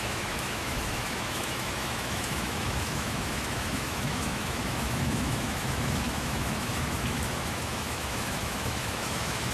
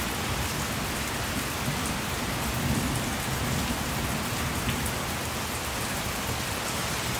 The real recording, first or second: second